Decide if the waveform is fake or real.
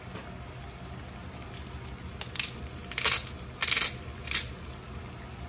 real